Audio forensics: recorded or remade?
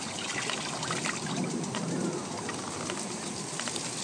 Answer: recorded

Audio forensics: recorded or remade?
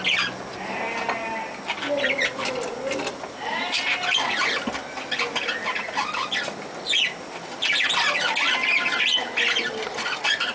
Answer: recorded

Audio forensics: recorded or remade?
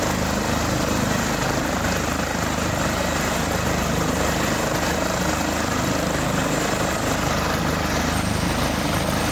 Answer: recorded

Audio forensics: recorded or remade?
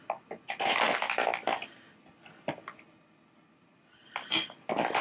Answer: recorded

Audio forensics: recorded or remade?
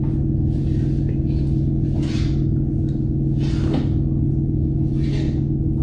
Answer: recorded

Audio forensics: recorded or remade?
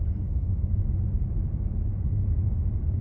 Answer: remade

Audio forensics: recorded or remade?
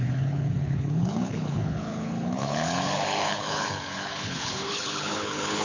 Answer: remade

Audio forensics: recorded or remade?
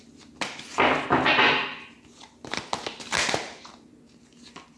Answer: recorded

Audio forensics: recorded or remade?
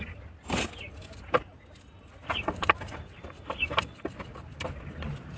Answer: recorded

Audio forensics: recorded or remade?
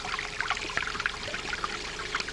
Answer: recorded